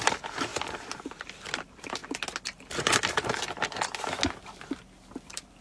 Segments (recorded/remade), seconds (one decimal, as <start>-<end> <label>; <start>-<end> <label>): 0.0-2.0 remade; 2.0-5.1 recorded; 5.1-5.6 remade

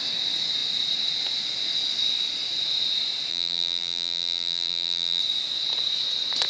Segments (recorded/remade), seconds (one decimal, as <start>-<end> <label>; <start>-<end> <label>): 0.0-3.3 recorded; 3.3-5.2 remade; 5.2-6.5 recorded

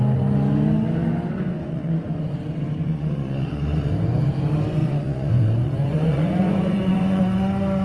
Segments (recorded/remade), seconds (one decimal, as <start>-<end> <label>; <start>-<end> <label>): 0.0-1.5 recorded; 1.5-2.1 remade; 2.1-2.8 recorded; 2.8-3.9 remade; 3.9-4.8 recorded; 4.8-7.2 remade; 7.2-7.8 recorded